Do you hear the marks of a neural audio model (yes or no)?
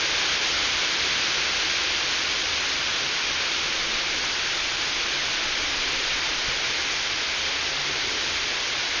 no